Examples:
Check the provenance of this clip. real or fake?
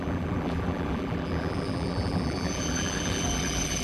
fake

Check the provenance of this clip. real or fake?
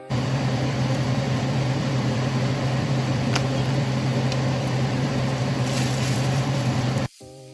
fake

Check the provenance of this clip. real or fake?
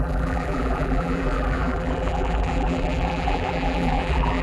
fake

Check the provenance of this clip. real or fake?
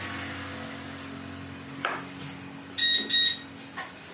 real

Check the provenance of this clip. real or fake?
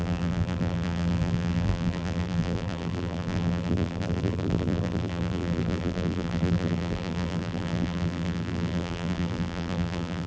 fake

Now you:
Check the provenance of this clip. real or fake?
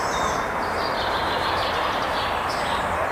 fake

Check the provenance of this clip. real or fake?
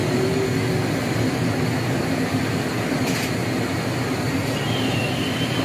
real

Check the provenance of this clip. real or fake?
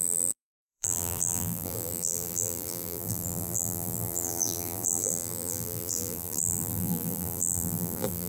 fake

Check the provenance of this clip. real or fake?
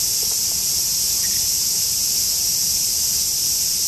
real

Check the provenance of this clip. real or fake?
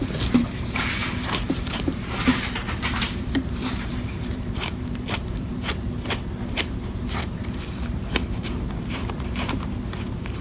fake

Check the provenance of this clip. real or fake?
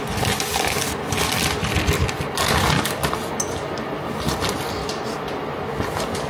real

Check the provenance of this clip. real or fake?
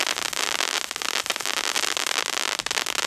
real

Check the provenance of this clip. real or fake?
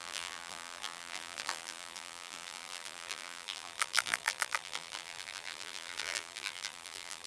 fake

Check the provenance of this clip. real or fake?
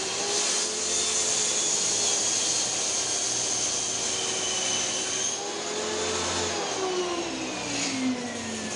real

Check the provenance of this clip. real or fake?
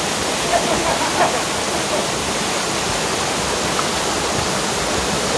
real